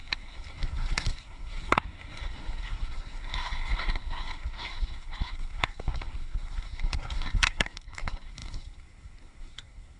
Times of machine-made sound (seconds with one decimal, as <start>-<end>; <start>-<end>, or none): 0.0-10.0